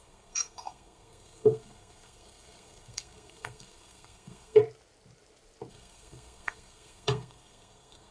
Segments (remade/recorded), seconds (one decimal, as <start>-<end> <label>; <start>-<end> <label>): 0.0-4.6 remade; 4.6-5.7 recorded; 5.7-8.1 remade